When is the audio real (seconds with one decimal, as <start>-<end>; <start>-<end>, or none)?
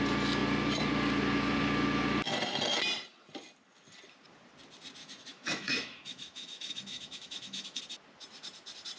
0.0-5.0; 7.8-9.0